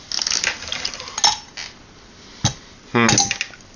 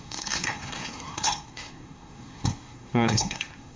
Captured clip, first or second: first